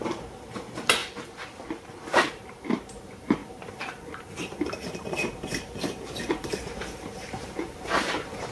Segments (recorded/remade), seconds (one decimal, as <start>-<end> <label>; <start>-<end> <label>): 0.0-1.0 remade; 1.0-2.3 recorded; 2.3-8.5 remade

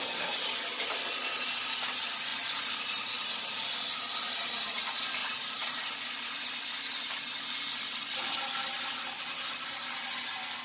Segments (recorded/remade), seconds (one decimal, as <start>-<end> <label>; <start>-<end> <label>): 0.0-5.2 recorded; 5.2-5.9 remade; 5.9-10.6 recorded

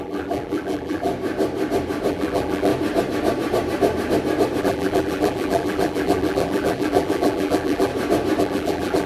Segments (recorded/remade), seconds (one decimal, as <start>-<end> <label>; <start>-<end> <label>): 0.0-1.1 remade; 1.1-2.1 recorded; 2.1-2.7 remade; 2.7-4.6 recorded; 4.6-7.9 remade; 7.9-8.4 recorded; 8.4-9.1 remade

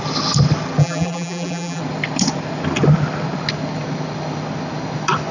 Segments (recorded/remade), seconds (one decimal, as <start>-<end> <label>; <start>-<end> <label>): 0.0-0.8 recorded; 0.8-1.8 remade; 1.8-5.3 recorded

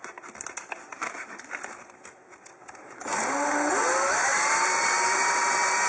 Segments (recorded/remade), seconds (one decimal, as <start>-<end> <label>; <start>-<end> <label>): 0.0-0.9 recorded; 0.9-3.7 remade; 3.7-4.3 recorded; 4.3-5.5 remade; 5.5-5.9 recorded

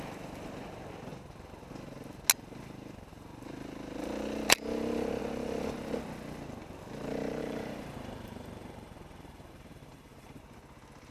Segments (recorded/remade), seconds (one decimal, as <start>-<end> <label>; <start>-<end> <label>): 0.0-7.4 recorded; 7.4-10.4 remade; 10.4-11.1 recorded

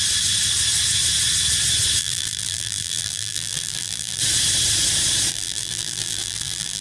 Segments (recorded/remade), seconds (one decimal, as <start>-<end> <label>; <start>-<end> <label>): 0.0-2.0 recorded; 2.0-4.2 remade; 4.2-5.3 recorded; 5.3-6.8 remade

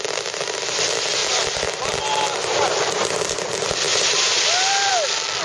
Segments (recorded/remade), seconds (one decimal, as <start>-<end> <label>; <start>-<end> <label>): 0.0-3.9 recorded; 3.9-4.9 remade; 4.9-5.4 recorded